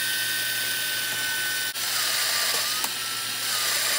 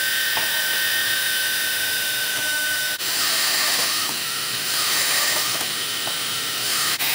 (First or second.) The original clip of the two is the first